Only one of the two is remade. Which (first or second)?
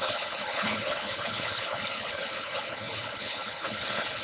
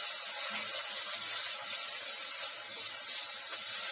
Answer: first